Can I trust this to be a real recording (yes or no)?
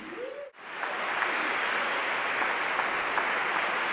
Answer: yes